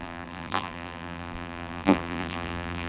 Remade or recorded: remade